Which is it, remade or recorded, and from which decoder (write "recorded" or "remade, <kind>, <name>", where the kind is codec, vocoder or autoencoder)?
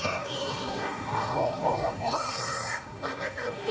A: remade, codec, SNAC